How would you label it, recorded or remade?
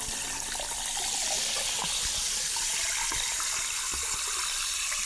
recorded